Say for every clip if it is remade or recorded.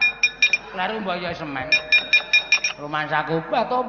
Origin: recorded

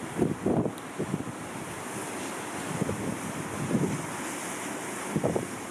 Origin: recorded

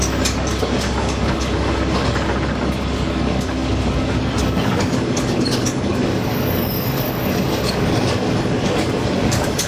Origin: remade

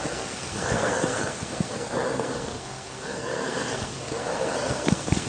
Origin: remade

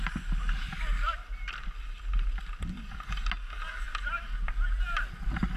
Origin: recorded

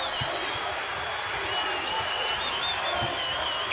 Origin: recorded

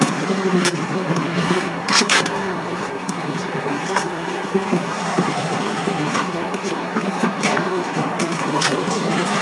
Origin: remade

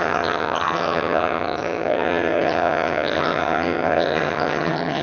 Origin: remade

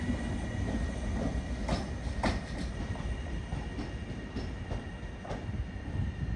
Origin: recorded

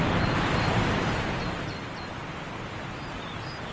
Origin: recorded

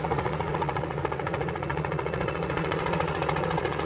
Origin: remade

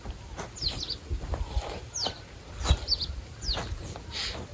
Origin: recorded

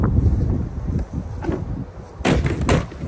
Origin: recorded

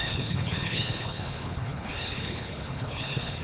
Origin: remade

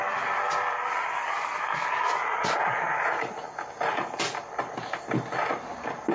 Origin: recorded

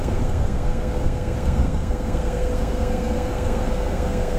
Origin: remade